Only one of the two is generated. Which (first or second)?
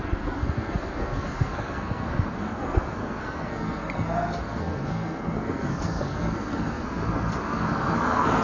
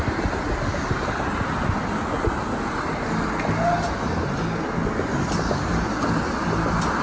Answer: first